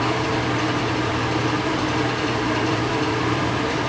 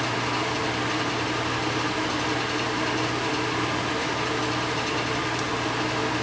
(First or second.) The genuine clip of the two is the second